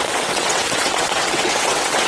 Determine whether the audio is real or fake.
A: fake